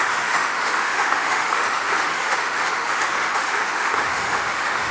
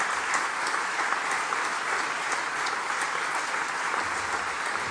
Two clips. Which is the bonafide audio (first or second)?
second